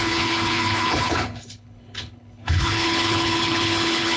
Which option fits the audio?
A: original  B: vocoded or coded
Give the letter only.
B